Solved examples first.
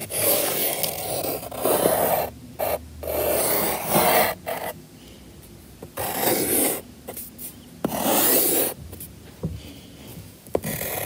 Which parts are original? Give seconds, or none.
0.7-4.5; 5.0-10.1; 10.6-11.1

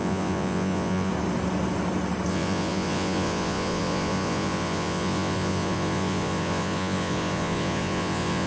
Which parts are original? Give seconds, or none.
1.1-2.3

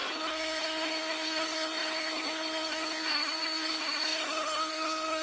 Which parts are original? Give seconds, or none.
none

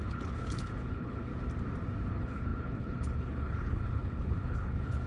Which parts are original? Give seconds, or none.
1.3-2.1

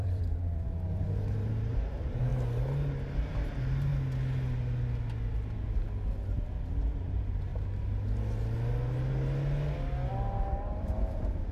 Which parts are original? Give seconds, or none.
2.3-3.3; 3.9-6.7; 7.5-10.1